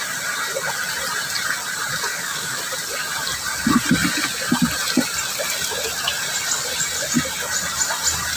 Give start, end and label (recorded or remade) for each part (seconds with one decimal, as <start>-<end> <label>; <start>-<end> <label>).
0.0-2.1 recorded; 2.1-2.6 remade; 2.6-8.4 recorded